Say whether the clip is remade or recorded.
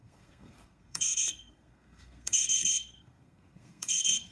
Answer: remade